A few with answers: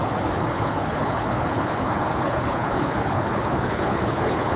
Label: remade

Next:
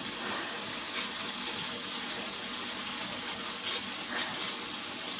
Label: recorded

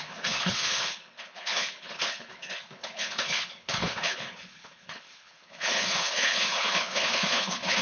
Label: remade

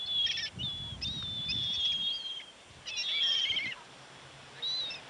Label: recorded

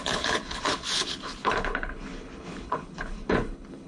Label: remade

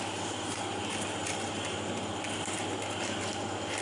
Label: recorded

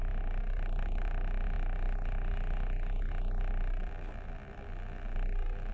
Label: recorded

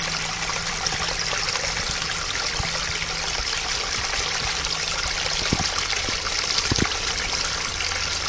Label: recorded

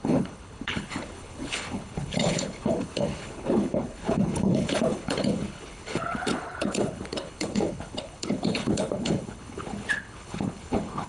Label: remade